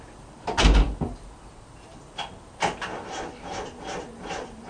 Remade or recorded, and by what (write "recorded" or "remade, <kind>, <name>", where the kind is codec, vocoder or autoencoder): recorded